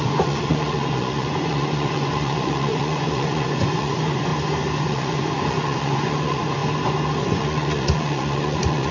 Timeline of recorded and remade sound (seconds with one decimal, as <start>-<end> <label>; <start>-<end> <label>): 0.0-4.3 remade; 4.3-4.8 recorded; 4.8-6.6 remade; 6.6-7.2 recorded; 7.2-8.9 remade